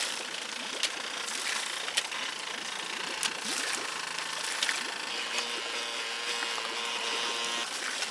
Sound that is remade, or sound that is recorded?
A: recorded